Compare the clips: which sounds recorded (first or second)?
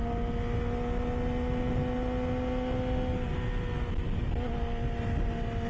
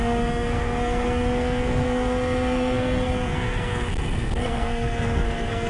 first